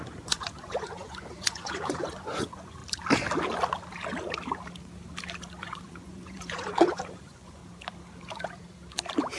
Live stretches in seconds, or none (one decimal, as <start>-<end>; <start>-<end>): 2.8-5.6; 7.6-9.4